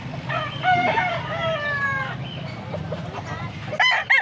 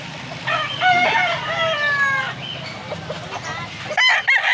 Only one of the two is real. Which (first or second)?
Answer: second